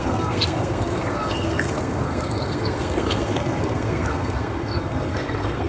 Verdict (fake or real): fake